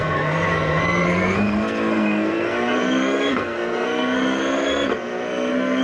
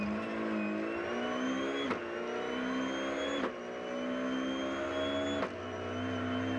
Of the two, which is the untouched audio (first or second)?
second